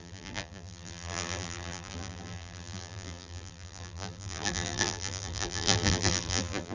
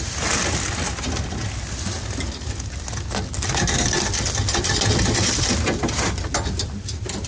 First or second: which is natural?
second